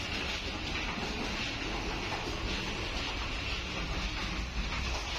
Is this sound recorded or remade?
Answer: recorded